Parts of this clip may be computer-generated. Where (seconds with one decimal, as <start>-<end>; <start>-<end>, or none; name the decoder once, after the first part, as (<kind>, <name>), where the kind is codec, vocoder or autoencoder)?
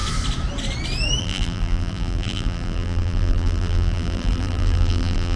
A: 1.2-5.4 (vocoder, BigVGAN v2)